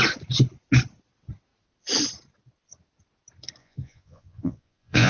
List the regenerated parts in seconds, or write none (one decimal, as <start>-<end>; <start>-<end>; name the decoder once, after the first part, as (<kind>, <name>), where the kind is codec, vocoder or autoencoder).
3.6-5.1 (vocoder, Vocos)